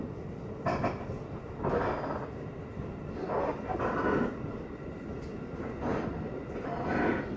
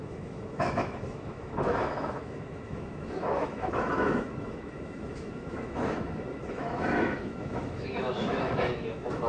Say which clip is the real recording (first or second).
first